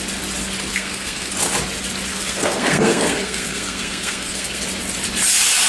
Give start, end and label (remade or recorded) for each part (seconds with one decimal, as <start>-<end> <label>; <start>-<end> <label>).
0.0-0.7 recorded; 0.7-1.3 remade; 1.3-2.1 recorded; 2.1-4.6 remade; 4.6-5.7 recorded